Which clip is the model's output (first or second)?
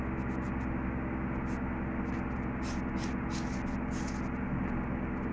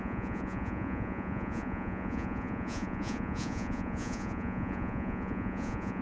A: second